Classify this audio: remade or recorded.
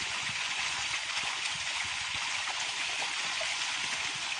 remade